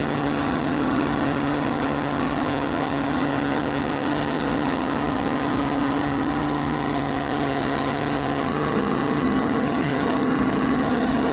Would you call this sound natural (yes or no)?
no